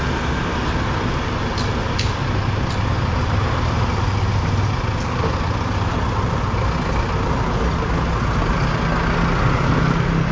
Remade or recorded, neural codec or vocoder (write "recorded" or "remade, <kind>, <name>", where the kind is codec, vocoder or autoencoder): recorded